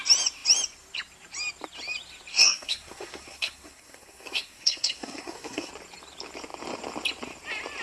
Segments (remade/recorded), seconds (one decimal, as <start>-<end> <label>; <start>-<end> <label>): 0.0-2.3 recorded; 2.3-5.7 remade; 5.7-7.8 recorded